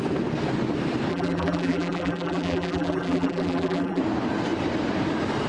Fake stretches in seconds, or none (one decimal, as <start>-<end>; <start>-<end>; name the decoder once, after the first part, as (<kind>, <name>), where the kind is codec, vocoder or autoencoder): 1.1-4.0 (vocoder, BigVGAN v2)